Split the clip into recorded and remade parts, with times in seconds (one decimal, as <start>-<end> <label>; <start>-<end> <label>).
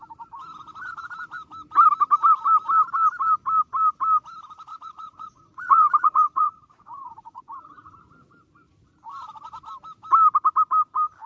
0.0-4.7 recorded; 4.7-7.9 remade; 7.9-11.3 recorded